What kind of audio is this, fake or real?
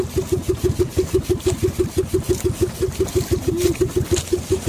real